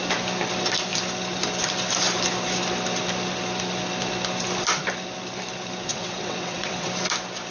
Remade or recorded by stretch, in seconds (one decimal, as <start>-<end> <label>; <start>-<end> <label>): 0.0-5.9 recorded; 5.9-6.9 remade; 6.9-7.5 recorded